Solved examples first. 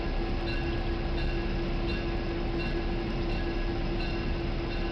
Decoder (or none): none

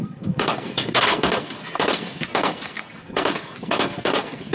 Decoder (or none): codec, SNAC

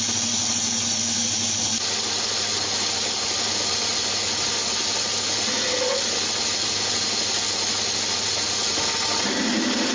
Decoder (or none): none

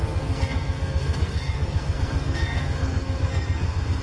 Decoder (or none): codec, SNAC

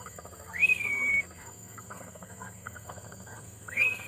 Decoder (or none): codec, SNAC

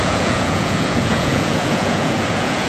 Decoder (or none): vocoder, Vocos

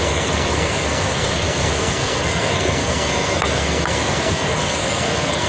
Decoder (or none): codec, SNAC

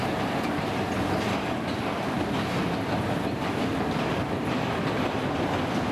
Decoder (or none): none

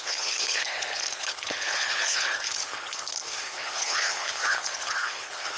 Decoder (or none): codec, HILCodec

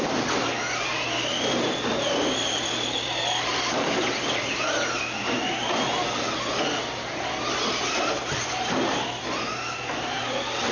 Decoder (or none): none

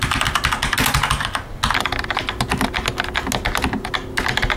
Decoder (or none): none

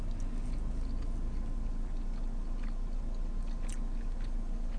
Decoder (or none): none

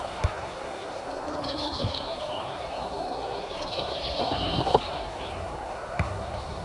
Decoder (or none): codec, SNAC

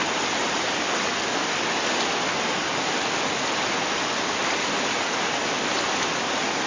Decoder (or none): none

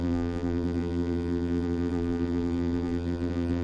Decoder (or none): vocoder, BigVGAN v2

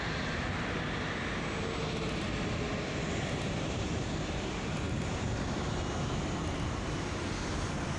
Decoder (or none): none